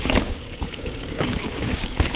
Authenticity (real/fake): fake